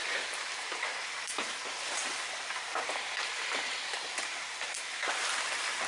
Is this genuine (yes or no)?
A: no